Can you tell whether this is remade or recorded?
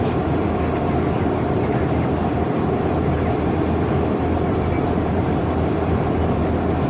recorded